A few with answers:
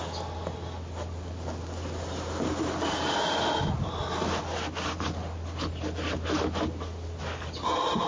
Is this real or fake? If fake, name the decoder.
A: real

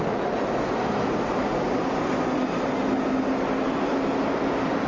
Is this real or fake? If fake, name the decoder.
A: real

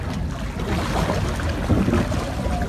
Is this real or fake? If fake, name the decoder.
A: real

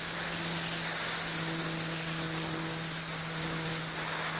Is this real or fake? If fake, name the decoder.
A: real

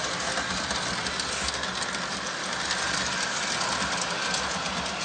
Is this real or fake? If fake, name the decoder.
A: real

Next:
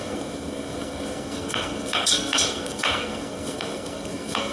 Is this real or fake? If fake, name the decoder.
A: fake, codec, SNAC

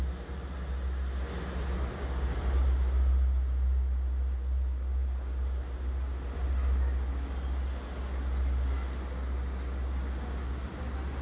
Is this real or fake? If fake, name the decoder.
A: real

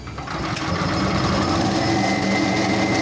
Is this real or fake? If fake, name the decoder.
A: real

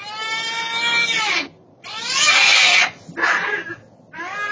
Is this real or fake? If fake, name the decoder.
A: real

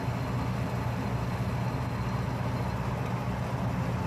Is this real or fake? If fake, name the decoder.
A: real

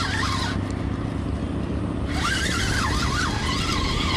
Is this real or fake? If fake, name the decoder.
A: fake, vocoder, BigVGAN v2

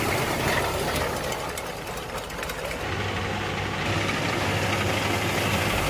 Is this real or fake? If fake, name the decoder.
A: real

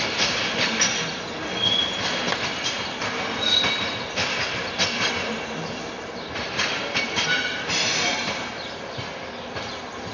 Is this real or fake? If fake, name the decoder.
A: real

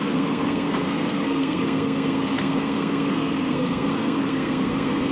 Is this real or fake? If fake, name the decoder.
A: fake, codec, SNAC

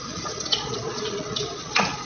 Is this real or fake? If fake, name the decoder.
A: fake, vocoder, Vocos